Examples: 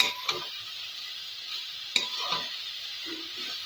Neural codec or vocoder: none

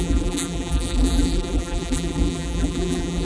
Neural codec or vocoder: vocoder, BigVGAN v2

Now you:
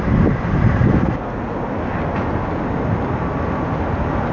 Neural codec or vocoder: none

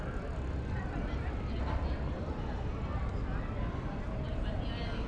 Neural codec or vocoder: none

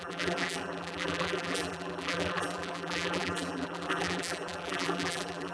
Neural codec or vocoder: vocoder, BigVGAN v2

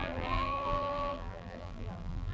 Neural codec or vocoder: vocoder, BigVGAN v2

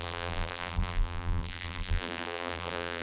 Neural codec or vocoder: vocoder, BigVGAN v2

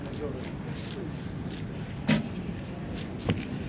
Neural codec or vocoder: none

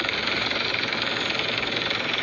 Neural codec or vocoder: none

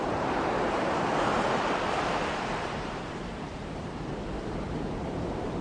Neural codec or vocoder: vocoder, BigVGAN v2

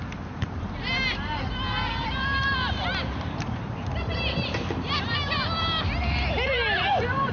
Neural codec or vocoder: vocoder, BigVGAN v2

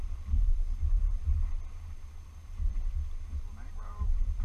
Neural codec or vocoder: vocoder, BigVGAN v2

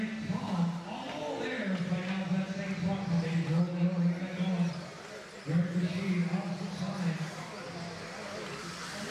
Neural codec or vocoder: none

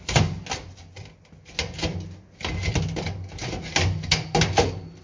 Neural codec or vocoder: none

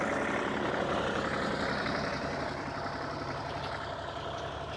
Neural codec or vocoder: none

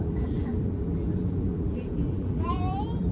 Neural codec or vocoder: vocoder, BigVGAN v2